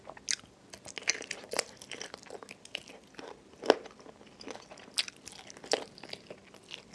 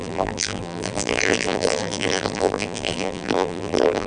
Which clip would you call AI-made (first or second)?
second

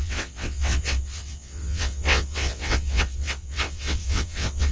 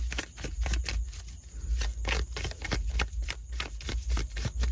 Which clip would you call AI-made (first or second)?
first